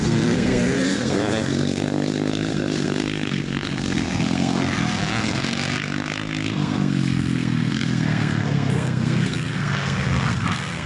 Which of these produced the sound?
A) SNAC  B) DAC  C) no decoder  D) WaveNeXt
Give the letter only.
A